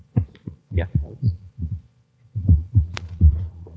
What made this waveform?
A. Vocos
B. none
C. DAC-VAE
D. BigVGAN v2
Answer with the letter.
A